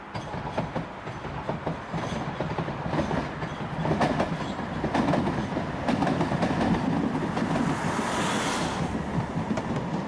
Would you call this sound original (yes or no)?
yes